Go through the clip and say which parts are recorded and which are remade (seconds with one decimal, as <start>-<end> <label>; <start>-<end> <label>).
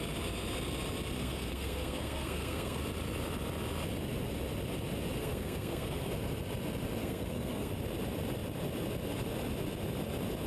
0.0-1.2 recorded; 1.2-2.8 remade; 2.8-5.2 recorded; 5.2-6.1 remade; 6.1-7.0 recorded; 7.0-7.7 remade; 7.7-10.5 recorded